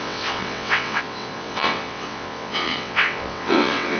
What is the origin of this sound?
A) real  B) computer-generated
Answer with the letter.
B